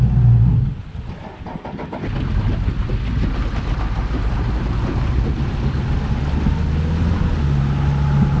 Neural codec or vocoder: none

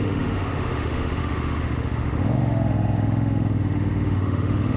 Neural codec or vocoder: autoencoder, DAC-VAE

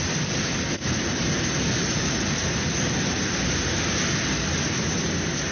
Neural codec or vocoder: none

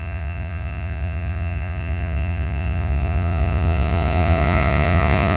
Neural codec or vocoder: vocoder, Vocos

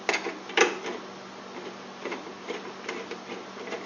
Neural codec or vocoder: none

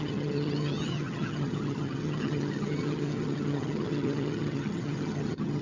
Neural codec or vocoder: vocoder, HiFi-GAN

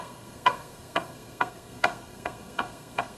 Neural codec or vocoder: codec, SNAC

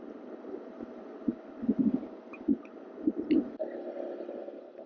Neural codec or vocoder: none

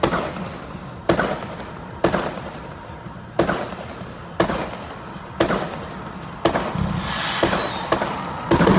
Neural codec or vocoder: none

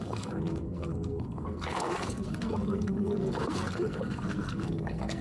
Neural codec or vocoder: codec, SNAC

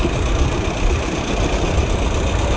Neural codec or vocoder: none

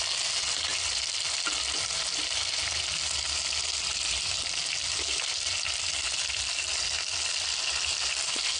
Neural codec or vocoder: none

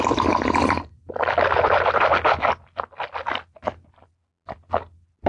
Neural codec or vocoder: none